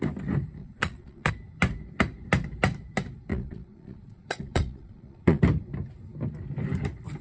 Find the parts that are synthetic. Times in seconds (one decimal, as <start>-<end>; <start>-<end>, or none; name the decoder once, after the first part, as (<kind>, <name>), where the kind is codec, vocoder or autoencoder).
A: 0.6-1.3 (vocoder, Vocos); 3.3-5.4